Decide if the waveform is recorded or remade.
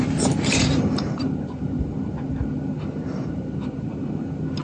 remade